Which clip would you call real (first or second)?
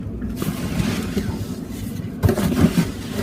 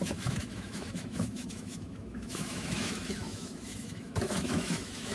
first